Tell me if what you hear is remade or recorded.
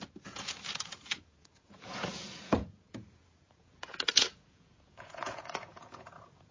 remade